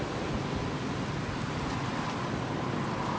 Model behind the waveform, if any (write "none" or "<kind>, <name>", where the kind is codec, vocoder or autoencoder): none